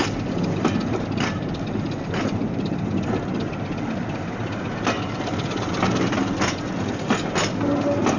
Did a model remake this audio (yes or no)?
no